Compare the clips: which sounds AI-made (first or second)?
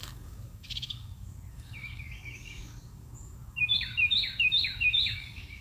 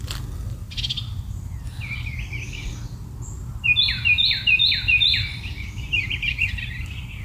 first